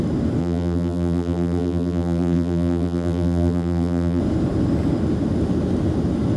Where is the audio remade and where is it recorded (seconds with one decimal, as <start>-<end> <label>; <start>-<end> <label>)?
0.0-0.4 recorded; 0.4-4.2 remade; 4.2-6.4 recorded